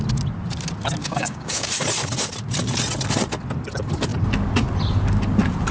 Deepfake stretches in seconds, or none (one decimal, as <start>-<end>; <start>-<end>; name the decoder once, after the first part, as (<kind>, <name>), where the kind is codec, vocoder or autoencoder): 1.0-1.7 (codec, DAC)